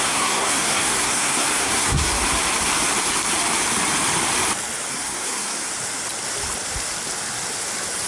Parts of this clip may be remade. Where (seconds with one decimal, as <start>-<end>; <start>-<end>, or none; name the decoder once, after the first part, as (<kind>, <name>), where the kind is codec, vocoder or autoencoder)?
0.0-2.1 (codec, SNAC); 4.9-5.7

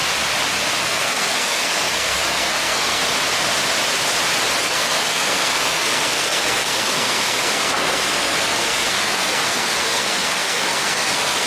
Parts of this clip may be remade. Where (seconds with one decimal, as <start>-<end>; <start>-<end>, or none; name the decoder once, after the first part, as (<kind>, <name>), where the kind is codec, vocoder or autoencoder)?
0.8-3.0 (codec, SNAC); 4.6-11.5

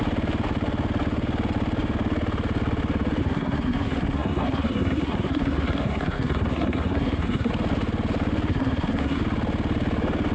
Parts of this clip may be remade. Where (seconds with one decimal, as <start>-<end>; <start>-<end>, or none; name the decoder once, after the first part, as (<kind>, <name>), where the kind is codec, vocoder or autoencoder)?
3.2-7.5 (codec, SNAC); 8.5-9.2

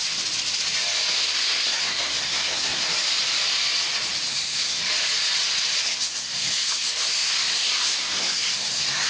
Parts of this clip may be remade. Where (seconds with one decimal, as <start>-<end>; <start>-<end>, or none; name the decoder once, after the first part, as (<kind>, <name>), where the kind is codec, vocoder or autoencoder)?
1.1-2.8 (codec, SNAC); 4.3-4.8; 5.8-9.1